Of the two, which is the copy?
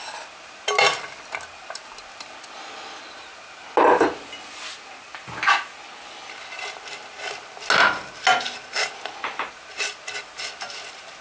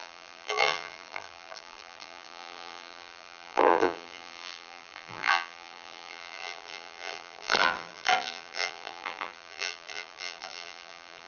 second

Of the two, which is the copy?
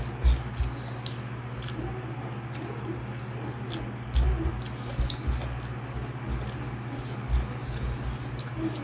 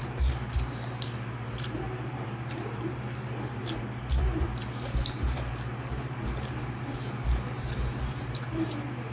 second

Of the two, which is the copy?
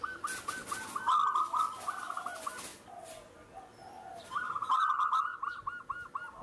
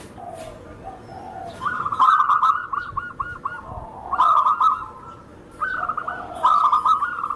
second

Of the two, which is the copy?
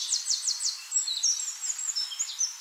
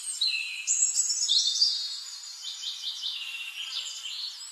second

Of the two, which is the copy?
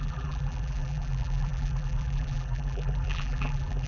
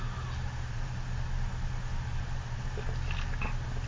first